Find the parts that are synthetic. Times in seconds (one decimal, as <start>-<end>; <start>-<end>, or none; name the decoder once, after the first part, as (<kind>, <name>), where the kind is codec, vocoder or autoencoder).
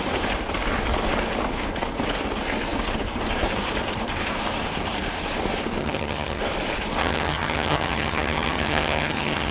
5.8-6.4 (vocoder, HiFi-GAN); 7.0-9.5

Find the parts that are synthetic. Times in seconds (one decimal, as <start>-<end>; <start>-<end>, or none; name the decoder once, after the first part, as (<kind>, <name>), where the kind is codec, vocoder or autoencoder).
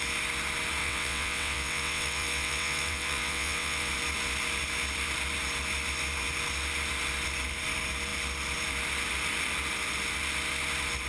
0.8-3.9 (vocoder, WaveNeXt)